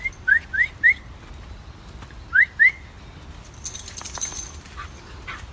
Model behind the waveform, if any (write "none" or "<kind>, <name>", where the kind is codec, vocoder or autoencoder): none